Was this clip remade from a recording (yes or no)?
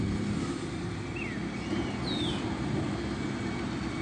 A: no